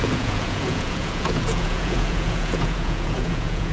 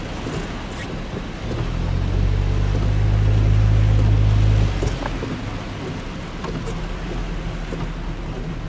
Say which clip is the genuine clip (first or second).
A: second